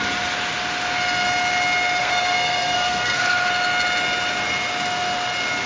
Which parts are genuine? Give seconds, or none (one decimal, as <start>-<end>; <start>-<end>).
0.0-2.0; 3.5-5.7